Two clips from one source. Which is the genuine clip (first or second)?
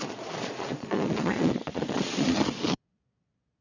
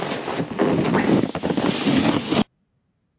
second